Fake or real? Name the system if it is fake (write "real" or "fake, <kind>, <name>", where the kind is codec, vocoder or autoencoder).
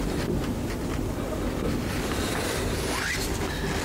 real